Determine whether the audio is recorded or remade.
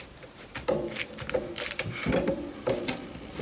recorded